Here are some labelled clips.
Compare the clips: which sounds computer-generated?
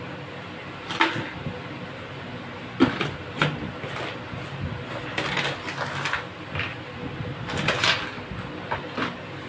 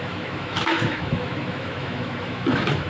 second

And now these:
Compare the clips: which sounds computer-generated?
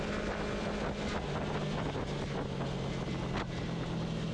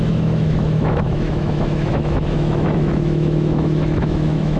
second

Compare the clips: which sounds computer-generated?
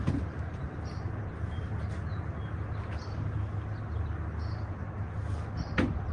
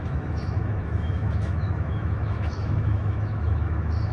second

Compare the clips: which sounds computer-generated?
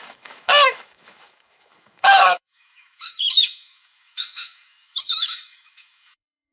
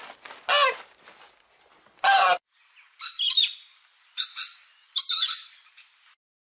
first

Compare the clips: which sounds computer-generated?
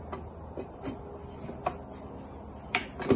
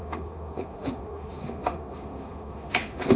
second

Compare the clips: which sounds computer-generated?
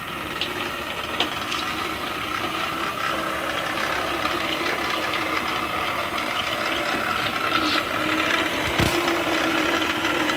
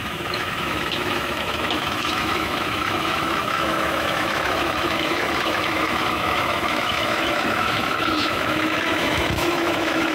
second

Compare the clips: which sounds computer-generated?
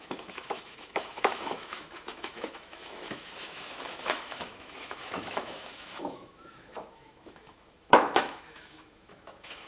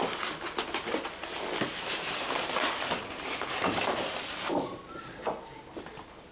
first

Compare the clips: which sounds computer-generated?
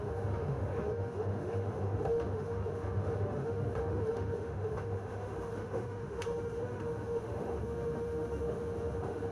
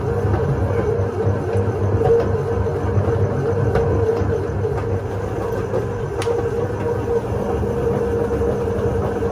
first